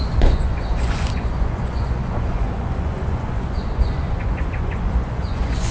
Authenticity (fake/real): fake